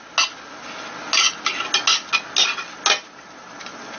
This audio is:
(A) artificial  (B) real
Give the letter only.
B